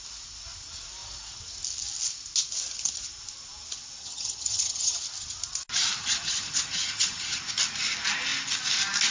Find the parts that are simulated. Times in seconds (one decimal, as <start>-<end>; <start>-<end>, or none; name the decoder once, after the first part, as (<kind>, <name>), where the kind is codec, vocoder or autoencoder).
4.0-5.0 (vocoder, HiFi-GAN); 6.0-7.4